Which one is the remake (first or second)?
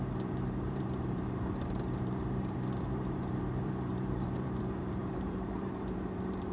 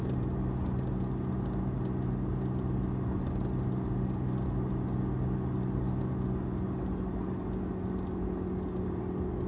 first